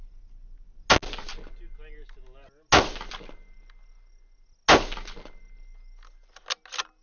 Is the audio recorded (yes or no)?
yes